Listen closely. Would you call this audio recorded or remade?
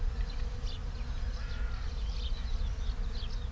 recorded